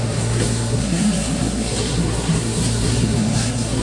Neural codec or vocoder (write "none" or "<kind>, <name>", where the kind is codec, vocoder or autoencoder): codec, SNAC